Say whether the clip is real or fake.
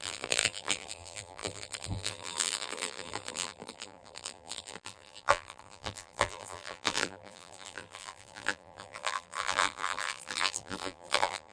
fake